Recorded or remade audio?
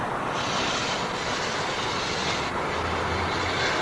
recorded